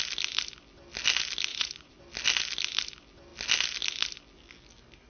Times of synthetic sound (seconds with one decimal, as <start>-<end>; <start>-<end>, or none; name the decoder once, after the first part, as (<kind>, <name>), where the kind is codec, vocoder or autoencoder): 1.5-2.0 (vocoder, Vocos)